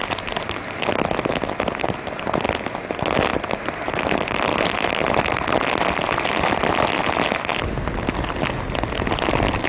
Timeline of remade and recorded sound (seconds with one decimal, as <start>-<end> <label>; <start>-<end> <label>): 0.0-9.7 recorded